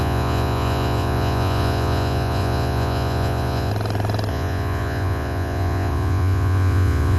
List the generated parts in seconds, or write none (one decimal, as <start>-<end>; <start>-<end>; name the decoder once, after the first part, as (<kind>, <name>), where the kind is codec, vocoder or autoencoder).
0.0-3.7 (vocoder, Vocos); 4.3-7.2